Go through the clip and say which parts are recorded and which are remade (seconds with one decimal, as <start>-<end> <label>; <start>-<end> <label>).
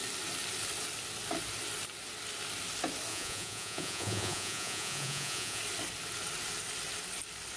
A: 0.0-3.1 recorded; 3.1-5.6 remade; 5.6-7.6 recorded